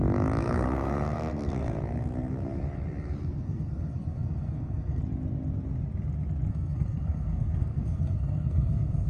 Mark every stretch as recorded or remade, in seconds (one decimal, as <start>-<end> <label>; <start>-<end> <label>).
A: 0.0-0.4 recorded; 0.4-5.0 remade; 5.0-6.5 recorded; 6.5-9.1 remade